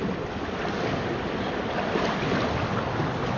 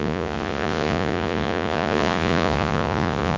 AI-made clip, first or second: second